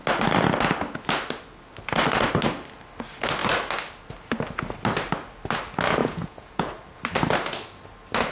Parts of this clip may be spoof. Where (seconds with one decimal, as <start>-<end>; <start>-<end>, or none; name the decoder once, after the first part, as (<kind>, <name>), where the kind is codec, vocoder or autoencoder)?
6.0-6.7 (vocoder, Vocos)